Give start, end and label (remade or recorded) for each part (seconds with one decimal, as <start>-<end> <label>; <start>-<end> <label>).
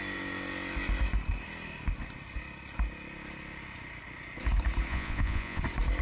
0.0-4.9 recorded; 4.9-5.6 remade; 5.6-6.0 recorded